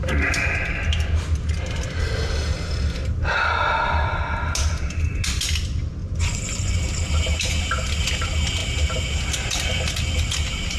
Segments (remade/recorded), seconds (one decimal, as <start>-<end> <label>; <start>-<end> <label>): 0.0-6.0 recorded; 6.0-6.8 remade; 6.8-10.8 recorded